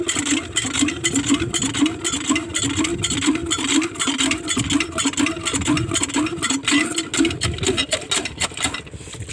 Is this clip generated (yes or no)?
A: no